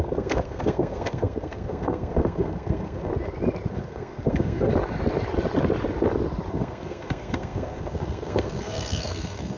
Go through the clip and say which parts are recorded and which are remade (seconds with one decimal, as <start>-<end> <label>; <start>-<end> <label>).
0.0-3.1 remade; 3.1-3.7 recorded; 3.7-4.7 remade; 4.7-6.5 recorded; 6.5-9.6 remade